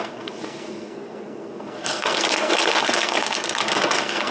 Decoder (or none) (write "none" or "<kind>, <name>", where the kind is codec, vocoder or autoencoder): codec, SNAC